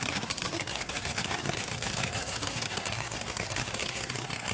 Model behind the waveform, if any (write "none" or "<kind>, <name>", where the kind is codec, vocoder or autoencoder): codec, SNAC